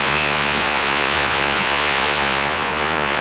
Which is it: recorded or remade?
remade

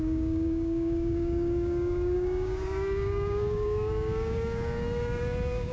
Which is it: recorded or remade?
remade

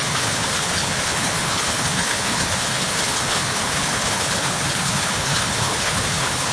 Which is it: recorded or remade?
remade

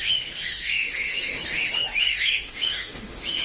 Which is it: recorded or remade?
remade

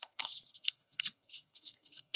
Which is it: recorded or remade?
remade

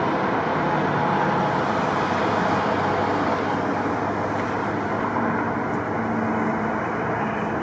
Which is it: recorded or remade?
recorded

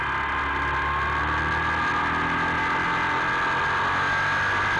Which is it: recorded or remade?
recorded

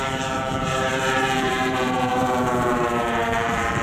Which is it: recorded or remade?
remade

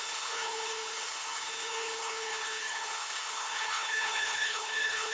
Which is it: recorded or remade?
remade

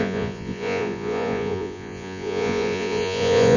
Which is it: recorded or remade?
remade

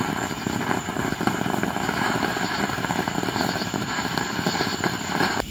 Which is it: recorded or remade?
remade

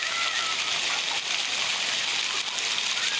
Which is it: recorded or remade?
recorded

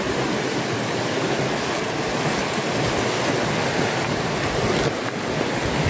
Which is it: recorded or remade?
recorded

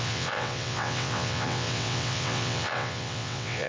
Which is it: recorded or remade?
remade